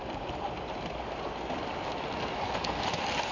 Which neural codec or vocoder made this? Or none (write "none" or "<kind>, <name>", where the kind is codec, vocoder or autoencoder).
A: none